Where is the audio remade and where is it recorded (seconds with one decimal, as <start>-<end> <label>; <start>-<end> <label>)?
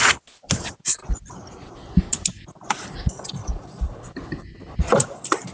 0.0-5.5 recorded